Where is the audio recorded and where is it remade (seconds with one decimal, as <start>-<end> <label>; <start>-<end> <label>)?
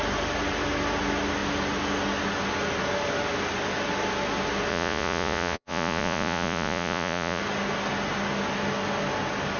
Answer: 0.0-4.7 recorded; 4.7-7.4 remade; 7.4-9.6 recorded